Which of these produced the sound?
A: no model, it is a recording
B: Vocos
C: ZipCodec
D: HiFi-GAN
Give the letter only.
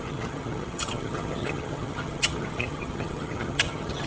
D